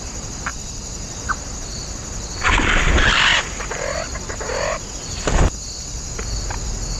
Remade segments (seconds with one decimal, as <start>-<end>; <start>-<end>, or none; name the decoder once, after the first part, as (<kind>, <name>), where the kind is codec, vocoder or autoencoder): 0.5-1.3 (vocoder, BigVGAN v2); 3.3-4.9